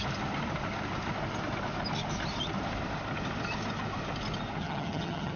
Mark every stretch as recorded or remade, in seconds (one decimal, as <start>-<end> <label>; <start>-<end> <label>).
0.0-4.6 recorded; 4.6-5.4 remade